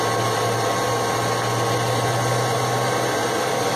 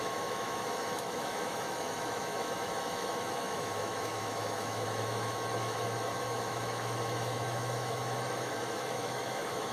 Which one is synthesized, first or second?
second